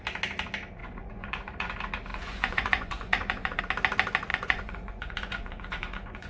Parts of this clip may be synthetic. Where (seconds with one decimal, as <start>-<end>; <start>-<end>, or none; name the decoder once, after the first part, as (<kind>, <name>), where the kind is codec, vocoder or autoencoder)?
0.8-1.7 (vocoder, Vocos); 2.1-3.6; 4.3-6.3